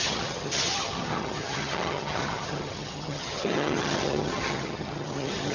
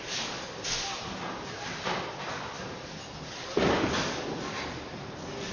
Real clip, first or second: second